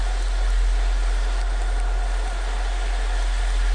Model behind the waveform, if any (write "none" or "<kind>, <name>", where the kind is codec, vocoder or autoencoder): none